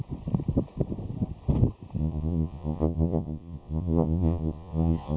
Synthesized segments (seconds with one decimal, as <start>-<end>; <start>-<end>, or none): 2.0-5.2